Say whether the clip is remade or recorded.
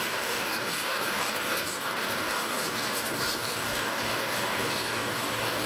remade